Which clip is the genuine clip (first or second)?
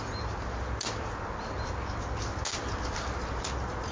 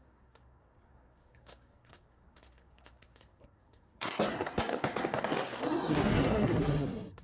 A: first